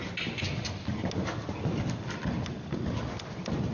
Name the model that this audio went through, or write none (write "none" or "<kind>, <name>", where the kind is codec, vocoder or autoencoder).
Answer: none